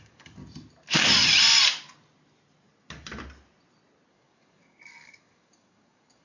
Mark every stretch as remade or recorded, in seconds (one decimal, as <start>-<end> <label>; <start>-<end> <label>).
0.0-0.4 remade; 0.4-4.1 recorded; 4.1-6.2 remade